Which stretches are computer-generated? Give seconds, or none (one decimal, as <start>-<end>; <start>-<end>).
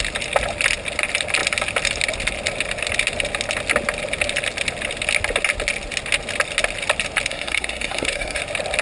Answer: 7.3-8.4